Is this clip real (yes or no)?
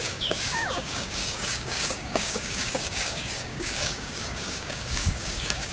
no